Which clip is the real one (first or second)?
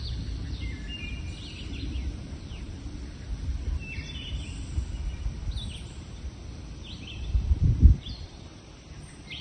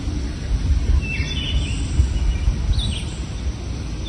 second